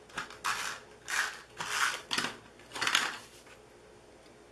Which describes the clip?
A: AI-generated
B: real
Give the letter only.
B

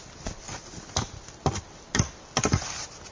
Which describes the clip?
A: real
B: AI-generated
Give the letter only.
A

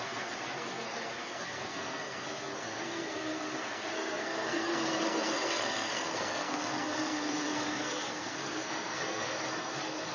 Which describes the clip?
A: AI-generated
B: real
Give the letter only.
A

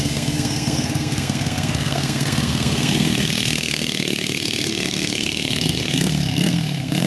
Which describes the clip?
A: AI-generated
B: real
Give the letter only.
A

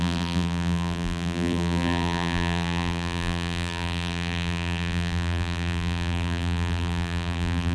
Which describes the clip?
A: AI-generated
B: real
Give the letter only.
A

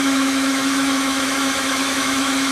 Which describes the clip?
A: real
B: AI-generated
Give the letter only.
B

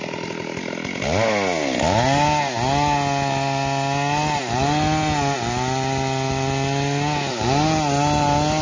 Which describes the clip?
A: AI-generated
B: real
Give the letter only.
B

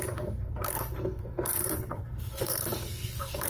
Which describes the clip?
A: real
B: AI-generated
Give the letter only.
B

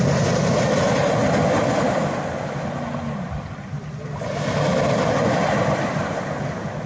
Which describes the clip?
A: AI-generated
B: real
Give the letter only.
B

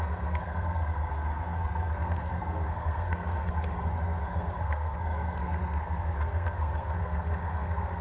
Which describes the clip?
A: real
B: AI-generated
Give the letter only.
B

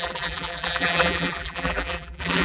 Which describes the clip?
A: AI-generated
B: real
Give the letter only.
A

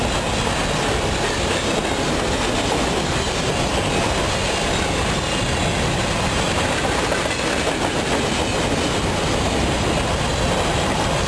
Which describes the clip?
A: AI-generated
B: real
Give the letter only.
B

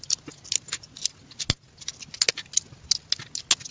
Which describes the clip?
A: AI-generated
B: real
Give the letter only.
B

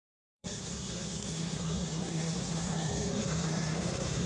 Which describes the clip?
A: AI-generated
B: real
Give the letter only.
A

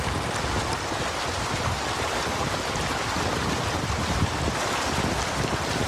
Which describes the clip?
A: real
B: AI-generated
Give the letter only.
A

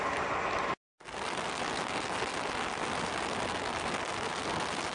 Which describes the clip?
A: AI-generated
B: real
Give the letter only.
B